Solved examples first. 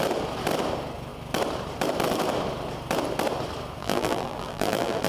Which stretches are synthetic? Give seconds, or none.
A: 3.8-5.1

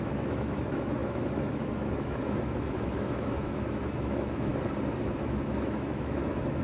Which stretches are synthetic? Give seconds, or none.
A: 0.0-4.5; 5.0-6.6

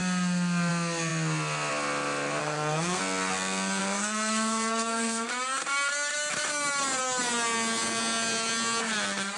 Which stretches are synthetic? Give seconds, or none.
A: 2.4-3.0; 3.8-5.3

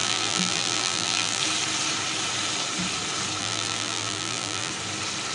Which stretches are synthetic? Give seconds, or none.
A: 0.0-1.4; 3.4-4.7